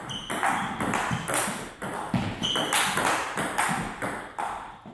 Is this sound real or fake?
real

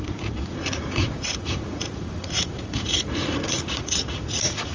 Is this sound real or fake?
fake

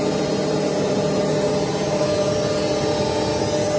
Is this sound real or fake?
real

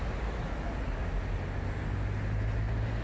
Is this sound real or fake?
real